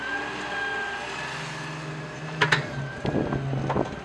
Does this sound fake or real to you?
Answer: real